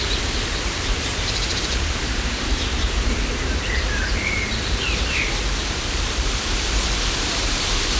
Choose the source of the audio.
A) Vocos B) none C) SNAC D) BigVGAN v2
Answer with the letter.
D